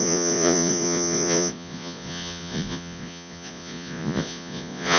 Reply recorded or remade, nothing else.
remade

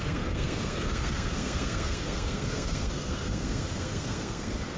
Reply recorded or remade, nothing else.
remade